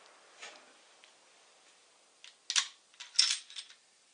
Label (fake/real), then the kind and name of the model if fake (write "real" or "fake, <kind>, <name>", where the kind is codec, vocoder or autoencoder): real